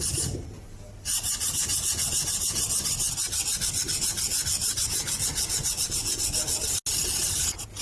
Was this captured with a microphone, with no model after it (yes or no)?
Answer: yes